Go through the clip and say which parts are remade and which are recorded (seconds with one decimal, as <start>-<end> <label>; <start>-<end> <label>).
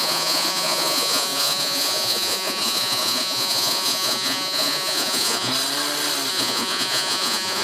0.0-5.5 remade; 5.5-6.3 recorded; 6.3-7.6 remade